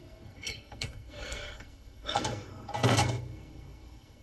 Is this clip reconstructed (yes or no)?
yes